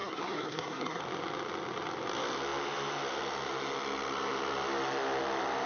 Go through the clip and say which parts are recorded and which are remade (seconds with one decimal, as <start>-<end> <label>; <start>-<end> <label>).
0.0-1.0 remade; 1.0-5.7 recorded